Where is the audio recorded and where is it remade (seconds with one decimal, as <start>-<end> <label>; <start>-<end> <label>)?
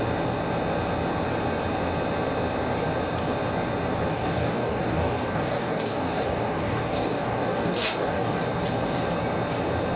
0.0-4.1 recorded; 4.1-8.4 remade; 8.4-10.0 recorded